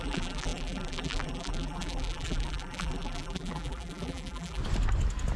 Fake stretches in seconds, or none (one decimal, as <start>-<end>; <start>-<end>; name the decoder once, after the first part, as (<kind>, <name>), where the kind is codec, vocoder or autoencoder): 0.0-4.6 (vocoder, BigVGAN v2)